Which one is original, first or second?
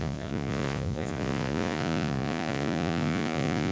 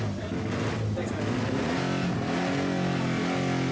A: second